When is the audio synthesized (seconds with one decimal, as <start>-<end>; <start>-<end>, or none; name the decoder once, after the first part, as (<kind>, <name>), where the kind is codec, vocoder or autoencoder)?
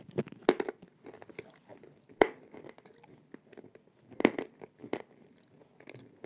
none